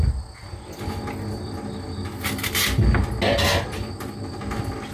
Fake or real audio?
real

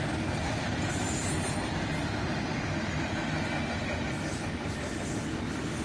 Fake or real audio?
real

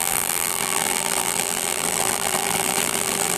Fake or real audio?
fake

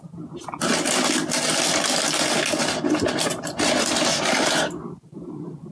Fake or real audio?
real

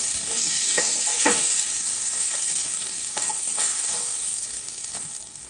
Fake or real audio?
fake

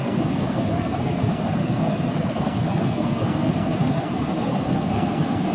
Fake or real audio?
fake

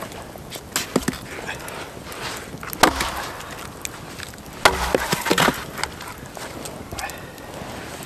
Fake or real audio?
real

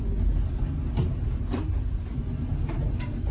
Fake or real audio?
real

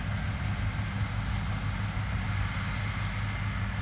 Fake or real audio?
real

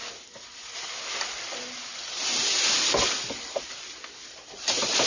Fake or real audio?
real